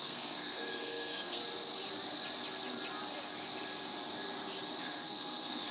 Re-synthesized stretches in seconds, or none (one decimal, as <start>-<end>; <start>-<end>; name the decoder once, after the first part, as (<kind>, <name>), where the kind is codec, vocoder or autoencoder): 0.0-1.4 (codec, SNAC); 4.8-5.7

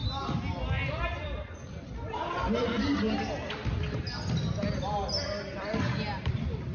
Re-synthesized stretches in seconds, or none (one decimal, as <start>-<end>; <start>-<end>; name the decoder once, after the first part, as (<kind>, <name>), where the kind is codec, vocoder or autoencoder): none

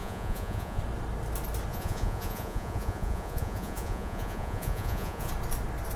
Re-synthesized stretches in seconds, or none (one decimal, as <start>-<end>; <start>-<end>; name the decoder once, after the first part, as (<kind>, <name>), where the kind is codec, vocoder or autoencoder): 0.0-0.8 (vocoder, Vocos); 1.7-5.3